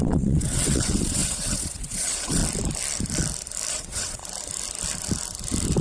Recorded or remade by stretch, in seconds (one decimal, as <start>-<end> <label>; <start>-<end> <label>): 0.0-2.4 remade; 2.4-3.7 recorded; 3.7-4.2 remade; 4.2-5.8 recorded